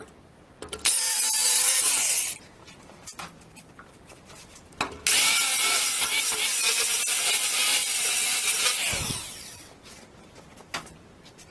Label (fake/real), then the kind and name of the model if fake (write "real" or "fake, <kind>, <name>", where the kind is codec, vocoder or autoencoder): fake, vocoder, BigVGAN v2